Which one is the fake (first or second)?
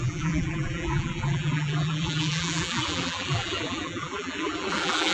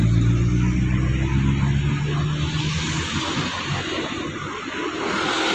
first